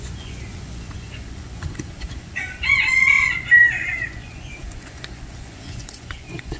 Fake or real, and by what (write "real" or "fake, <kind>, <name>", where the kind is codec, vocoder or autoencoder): fake, vocoder, Vocos